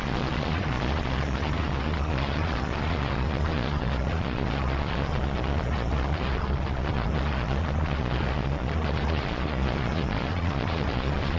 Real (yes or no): no